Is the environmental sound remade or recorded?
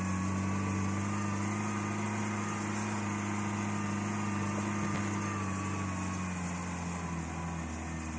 recorded